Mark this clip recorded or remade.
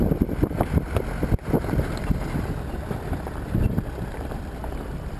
remade